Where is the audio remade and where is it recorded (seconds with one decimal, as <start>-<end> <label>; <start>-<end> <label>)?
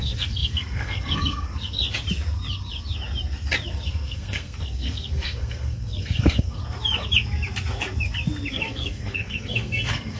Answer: 0.0-1.8 remade; 1.8-3.7 recorded; 3.7-6.6 remade; 6.6-8.5 recorded; 8.5-10.2 remade